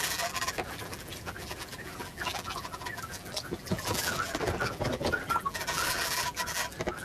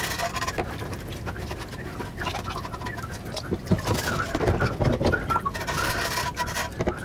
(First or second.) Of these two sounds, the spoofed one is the first